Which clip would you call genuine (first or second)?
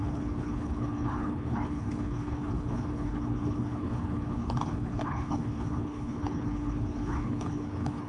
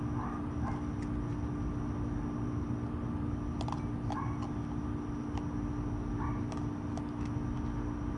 second